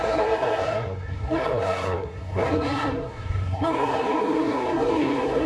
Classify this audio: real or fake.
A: fake